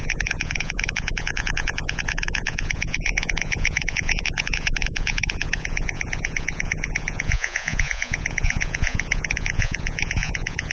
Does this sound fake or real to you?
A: fake